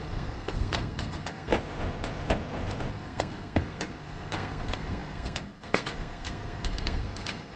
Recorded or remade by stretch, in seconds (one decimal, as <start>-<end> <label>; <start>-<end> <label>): 0.0-1.5 remade; 1.5-2.9 recorded; 2.9-7.6 remade